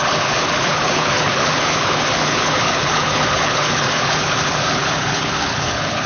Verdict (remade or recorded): remade